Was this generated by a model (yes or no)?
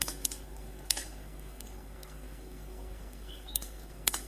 yes